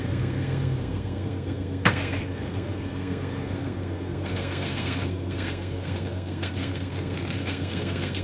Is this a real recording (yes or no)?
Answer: no